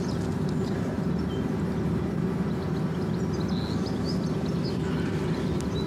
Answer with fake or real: real